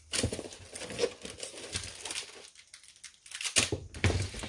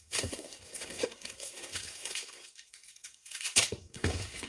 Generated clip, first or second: second